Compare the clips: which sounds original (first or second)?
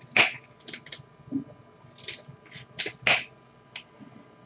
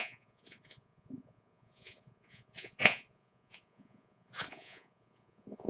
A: first